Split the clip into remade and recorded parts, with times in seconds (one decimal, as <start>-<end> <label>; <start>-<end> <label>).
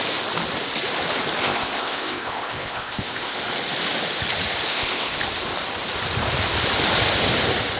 0.0-1.4 recorded; 1.4-3.5 remade; 3.5-4.7 recorded; 4.7-5.2 remade; 5.2-7.8 recorded